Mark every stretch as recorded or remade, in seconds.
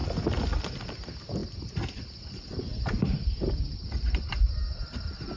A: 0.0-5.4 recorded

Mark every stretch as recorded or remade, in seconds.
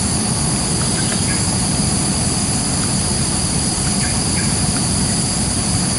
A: 0.0-3.1 recorded; 3.1-4.6 remade; 4.6-6.0 recorded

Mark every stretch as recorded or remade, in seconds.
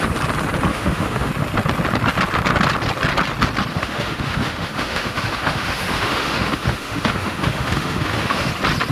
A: 0.0-0.7 recorded; 0.7-1.3 remade; 1.3-3.7 recorded; 3.7-8.5 remade; 8.5-8.9 recorded